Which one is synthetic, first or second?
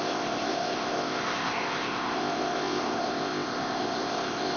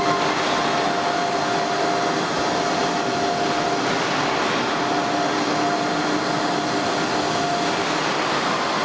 first